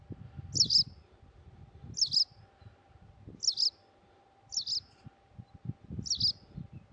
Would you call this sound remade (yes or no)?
no